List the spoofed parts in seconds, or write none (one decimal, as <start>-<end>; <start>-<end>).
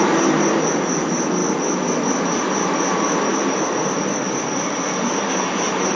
none